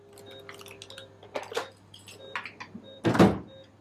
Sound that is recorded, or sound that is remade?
recorded